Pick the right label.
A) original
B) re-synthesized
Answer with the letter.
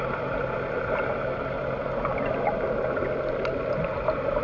A